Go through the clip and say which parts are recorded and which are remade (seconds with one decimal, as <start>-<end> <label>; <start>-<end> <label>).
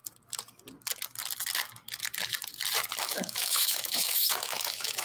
0.0-3.0 recorded; 3.0-5.0 remade